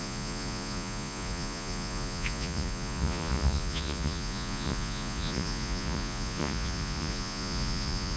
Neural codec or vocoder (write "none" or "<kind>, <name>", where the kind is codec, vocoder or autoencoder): vocoder, Vocos